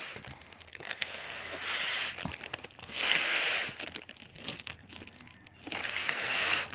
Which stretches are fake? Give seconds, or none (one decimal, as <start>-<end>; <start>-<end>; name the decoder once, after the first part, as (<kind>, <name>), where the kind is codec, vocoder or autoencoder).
0.7-1.6 (codec, SNAC); 2.8-3.4; 4.3-4.9; 5.8-6.7